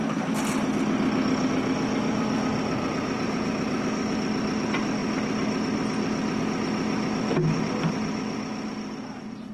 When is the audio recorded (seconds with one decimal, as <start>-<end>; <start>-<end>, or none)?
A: 0.0-9.5